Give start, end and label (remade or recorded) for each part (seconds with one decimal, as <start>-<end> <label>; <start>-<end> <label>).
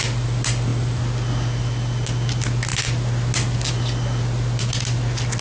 0.0-5.4 recorded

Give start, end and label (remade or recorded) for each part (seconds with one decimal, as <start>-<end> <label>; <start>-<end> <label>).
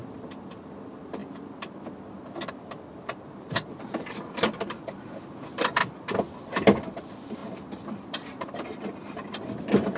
0.0-1.2 remade; 1.2-2.5 recorded; 2.5-10.0 remade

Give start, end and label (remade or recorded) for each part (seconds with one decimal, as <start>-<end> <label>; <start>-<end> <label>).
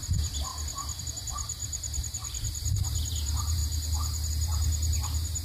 0.0-0.5 remade; 0.5-1.0 recorded; 1.0-3.6 remade; 3.6-4.3 recorded; 4.3-5.4 remade